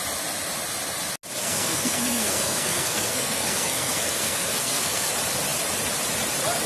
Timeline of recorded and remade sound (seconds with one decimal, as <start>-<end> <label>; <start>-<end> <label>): 0.0-1.4 recorded; 1.4-5.1 remade; 5.1-6.7 recorded